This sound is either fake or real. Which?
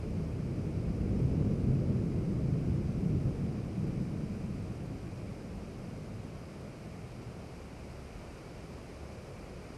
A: real